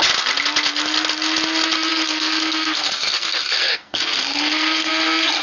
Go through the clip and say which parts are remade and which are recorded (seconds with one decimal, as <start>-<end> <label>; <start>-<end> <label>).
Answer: 0.0-1.9 recorded; 1.9-4.9 remade; 4.9-5.4 recorded